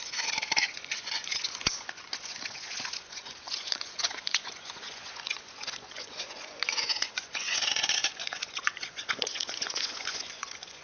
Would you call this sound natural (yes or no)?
no